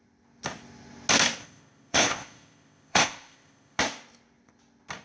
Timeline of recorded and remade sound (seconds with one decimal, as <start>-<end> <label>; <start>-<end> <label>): 0.0-1.4 recorded; 1.4-3.8 remade; 3.8-5.0 recorded